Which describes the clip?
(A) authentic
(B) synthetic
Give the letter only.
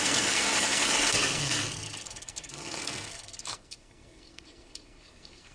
B